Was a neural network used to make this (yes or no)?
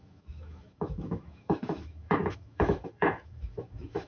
yes